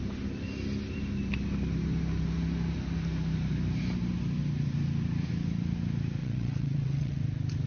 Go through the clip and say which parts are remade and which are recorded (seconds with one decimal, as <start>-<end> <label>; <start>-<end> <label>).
0.0-6.2 recorded; 6.2-7.2 remade; 7.2-7.7 recorded